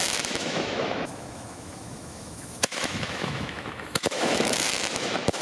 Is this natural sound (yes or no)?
no